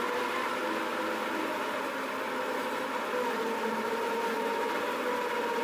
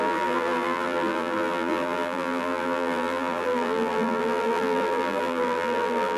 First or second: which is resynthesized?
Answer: second